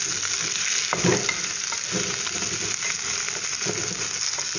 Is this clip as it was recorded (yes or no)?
yes